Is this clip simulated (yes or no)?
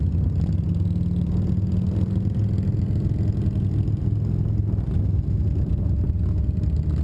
no